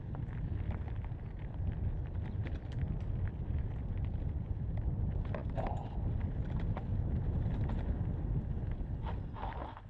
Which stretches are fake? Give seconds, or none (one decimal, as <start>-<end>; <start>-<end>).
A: none